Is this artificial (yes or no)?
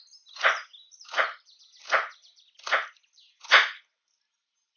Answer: no